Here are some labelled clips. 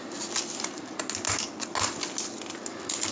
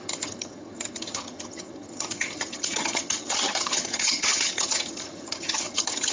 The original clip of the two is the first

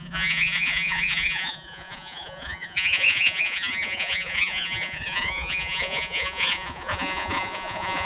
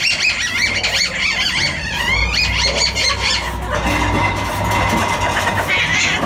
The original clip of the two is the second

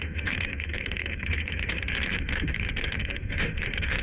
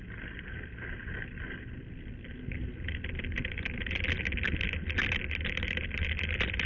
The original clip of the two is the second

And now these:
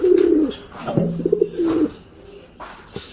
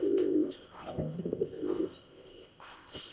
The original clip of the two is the first